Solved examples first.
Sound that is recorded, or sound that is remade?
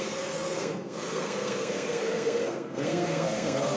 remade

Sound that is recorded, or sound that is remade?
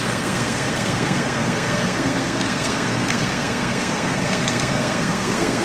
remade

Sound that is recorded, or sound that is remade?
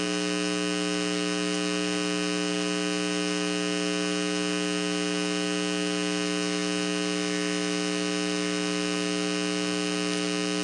recorded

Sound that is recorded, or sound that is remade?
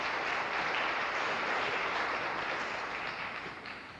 recorded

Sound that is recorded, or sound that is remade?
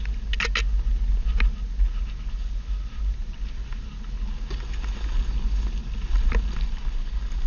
recorded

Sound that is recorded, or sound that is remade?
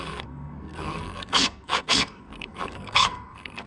remade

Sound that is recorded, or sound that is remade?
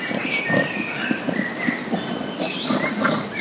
recorded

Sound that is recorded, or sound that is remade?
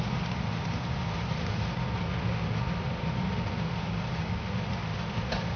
recorded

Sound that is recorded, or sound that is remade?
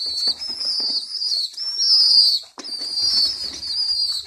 recorded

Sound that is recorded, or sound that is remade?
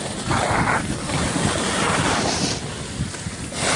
recorded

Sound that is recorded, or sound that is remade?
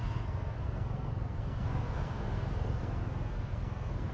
remade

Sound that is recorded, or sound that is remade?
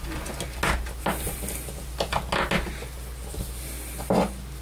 recorded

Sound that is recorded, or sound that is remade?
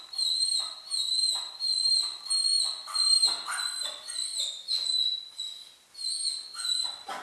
recorded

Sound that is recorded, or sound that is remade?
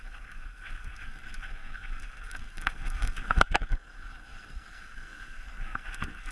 remade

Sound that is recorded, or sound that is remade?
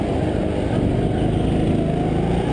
recorded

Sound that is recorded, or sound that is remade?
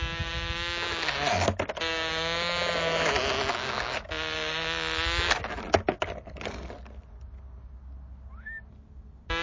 recorded